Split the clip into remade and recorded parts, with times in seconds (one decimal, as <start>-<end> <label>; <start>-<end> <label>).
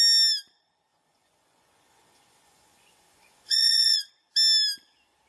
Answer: 0.0-0.9 recorded; 0.9-4.1 remade; 4.1-5.3 recorded